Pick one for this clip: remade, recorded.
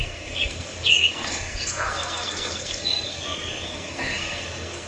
remade